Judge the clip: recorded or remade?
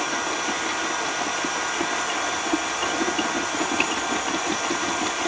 recorded